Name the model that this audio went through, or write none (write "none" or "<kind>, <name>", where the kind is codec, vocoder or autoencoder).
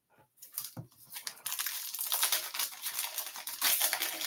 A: none